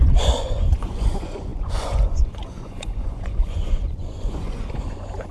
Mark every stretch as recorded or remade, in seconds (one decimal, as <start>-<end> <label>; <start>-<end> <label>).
0.0-5.3 remade